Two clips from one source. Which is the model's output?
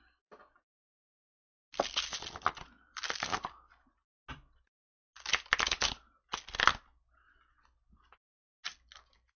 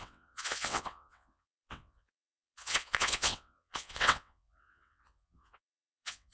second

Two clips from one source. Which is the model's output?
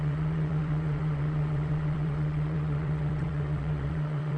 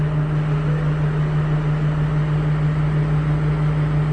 first